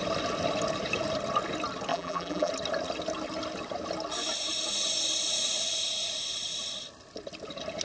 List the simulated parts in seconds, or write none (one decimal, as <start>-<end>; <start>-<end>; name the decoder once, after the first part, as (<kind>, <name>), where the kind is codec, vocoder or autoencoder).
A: 1.9-2.5 (vocoder, BigVGAN v2)